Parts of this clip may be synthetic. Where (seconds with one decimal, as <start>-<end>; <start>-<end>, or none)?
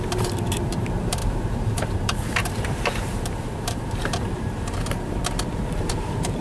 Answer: 0.0-6.4